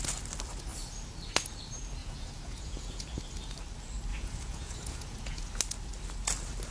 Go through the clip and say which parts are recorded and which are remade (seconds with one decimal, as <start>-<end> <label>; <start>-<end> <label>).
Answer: 0.0-2.0 recorded; 2.0-3.2 remade; 3.2-4.1 recorded; 4.1-5.6 remade; 5.6-6.7 recorded